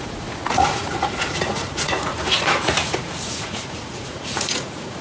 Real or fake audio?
fake